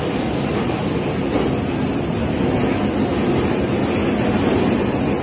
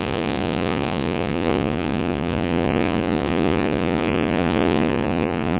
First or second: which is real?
first